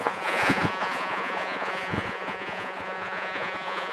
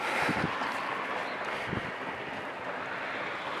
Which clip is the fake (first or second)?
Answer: first